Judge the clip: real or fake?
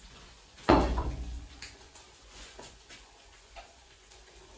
fake